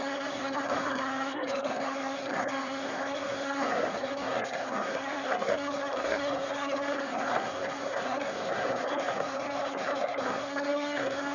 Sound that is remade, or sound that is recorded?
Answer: remade